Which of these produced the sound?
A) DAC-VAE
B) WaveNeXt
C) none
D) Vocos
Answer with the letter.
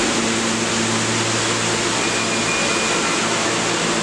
C